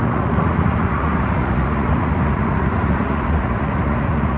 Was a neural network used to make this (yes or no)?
yes